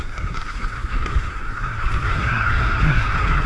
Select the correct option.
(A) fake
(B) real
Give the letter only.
A